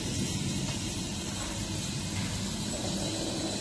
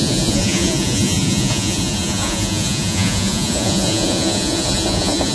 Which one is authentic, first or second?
first